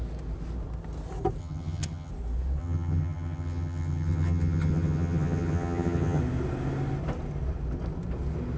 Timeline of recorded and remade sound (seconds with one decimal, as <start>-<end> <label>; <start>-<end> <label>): 0.0-1.4 recorded; 1.4-2.1 remade; 2.1-2.6 recorded; 2.6-6.2 remade; 6.2-8.6 recorded